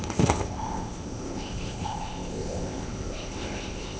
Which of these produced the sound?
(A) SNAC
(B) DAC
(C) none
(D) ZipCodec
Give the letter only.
D